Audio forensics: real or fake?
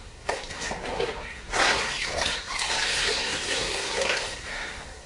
fake